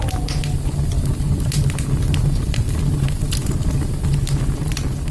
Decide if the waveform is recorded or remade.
recorded